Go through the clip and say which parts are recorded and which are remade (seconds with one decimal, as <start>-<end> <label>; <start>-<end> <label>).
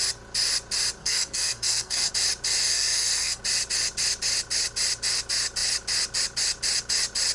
0.0-1.0 recorded; 1.0-2.1 remade; 2.1-2.7 recorded; 2.7-3.4 remade; 3.4-7.3 recorded